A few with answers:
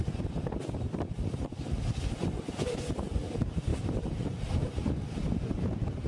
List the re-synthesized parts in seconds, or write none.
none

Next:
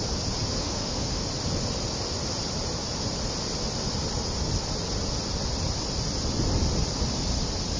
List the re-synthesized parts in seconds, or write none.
0.6-1.2 (autoencoder, DAC-VAE)